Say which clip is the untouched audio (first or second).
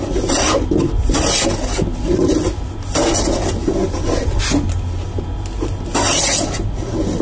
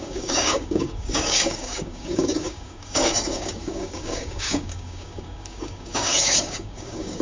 first